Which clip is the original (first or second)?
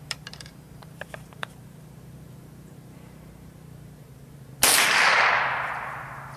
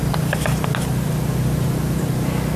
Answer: second